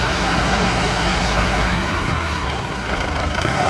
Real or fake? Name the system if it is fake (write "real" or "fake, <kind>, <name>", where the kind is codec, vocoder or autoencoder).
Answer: fake, codec, SNAC